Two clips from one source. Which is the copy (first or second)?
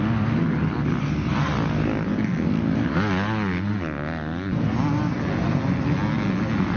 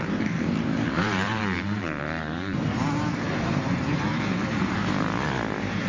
second